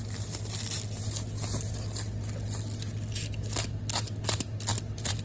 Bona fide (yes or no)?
yes